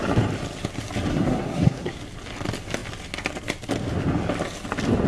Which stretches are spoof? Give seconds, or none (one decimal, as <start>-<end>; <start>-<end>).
1.1-2.0